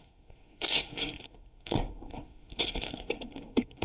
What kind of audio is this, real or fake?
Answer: fake